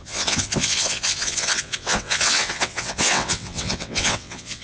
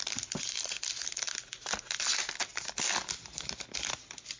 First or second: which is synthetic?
first